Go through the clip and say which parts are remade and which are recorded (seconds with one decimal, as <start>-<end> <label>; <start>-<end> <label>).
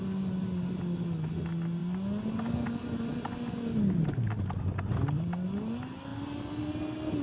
0.0-7.2 recorded